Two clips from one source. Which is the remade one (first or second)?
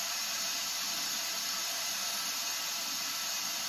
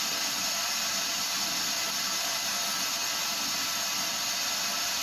first